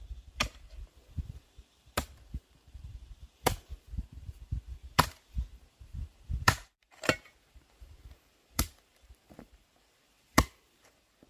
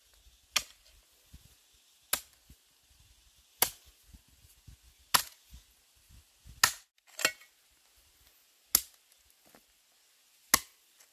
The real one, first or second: second